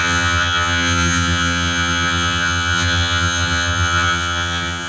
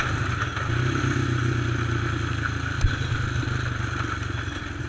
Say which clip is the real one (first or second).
second